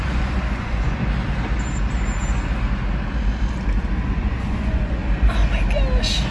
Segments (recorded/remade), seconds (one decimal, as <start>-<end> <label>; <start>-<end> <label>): 0.0-1.0 remade; 1.0-4.1 recorded; 4.1-5.0 remade; 5.0-6.3 recorded